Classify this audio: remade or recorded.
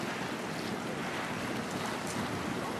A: recorded